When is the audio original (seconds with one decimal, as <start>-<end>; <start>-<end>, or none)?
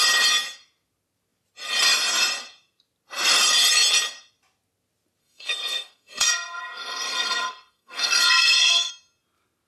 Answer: 0.0-5.2; 8.9-9.7